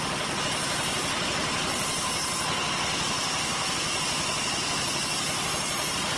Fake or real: real